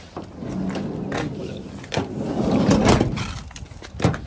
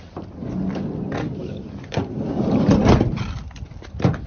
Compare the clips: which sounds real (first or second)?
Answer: first